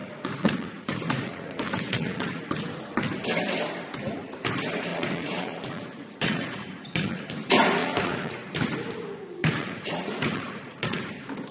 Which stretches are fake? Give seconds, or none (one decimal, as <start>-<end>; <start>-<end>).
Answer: 0.0-2.4; 4.9-7.2; 7.8-8.5; 9.4-11.0